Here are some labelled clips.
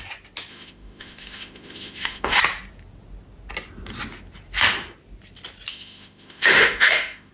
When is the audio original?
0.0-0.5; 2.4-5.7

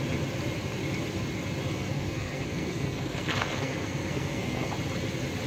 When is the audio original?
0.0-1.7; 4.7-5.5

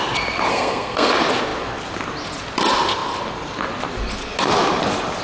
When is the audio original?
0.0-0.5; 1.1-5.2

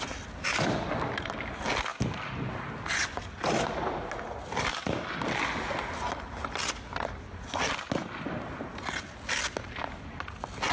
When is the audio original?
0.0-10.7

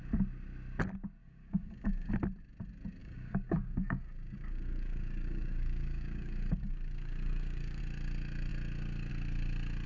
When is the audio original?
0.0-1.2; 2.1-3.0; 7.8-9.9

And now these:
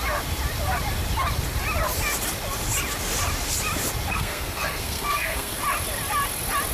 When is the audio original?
0.0-4.1; 5.6-6.7